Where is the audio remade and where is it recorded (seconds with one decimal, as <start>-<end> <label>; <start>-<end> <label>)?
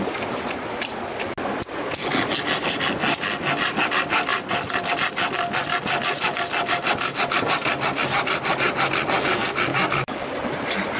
0.0-9.7 recorded; 9.7-10.3 remade; 10.3-11.0 recorded